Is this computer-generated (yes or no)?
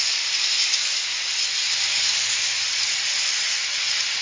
no